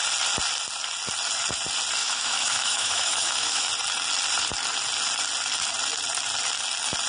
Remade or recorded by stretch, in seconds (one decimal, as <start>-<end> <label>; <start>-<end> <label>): 0.0-2.0 recorded; 2.0-3.7 remade; 3.7-7.1 recorded